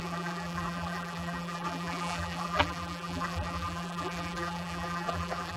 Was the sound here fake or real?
fake